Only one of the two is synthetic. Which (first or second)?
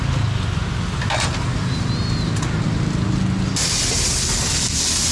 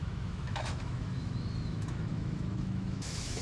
second